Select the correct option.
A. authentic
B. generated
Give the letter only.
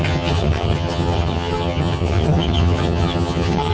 B